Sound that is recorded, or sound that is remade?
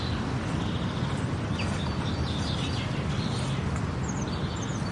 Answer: recorded